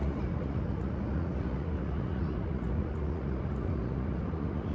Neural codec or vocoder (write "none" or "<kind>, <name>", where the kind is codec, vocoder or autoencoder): vocoder, Vocos